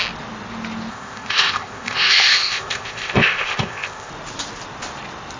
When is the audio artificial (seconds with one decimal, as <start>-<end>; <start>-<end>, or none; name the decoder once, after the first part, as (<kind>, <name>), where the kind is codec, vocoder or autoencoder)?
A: 0.9-4.1 (codec, ZipCodec)